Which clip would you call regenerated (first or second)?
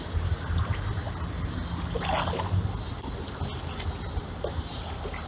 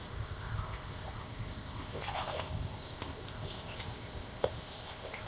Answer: second